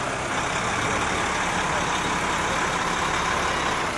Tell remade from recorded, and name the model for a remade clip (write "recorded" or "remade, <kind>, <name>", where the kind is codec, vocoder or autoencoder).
recorded